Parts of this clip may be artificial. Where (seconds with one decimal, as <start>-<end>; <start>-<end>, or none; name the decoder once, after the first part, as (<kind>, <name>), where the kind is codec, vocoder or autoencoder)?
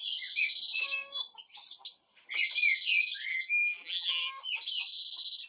3.3-4.3 (vocoder, BigVGAN v2)